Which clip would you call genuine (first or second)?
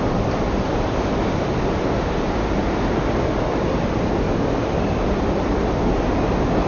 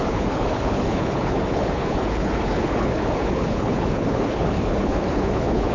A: first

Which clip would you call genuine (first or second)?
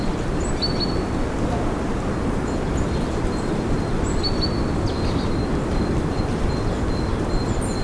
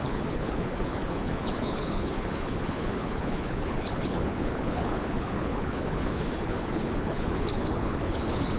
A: first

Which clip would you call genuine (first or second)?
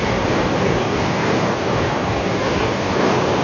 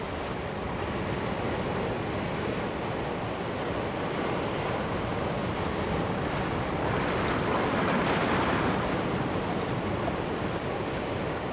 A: second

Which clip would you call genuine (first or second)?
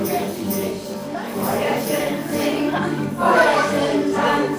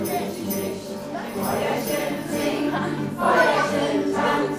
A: second